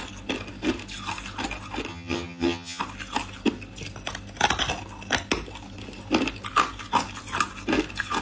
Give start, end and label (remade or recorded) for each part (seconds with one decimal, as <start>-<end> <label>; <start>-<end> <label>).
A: 0.0-1.9 recorded; 1.9-2.8 remade; 2.8-8.2 recorded